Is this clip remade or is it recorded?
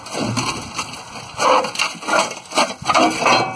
recorded